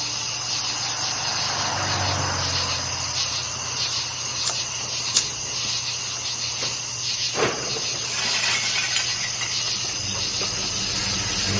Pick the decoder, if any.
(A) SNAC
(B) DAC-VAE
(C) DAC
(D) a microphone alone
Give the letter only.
D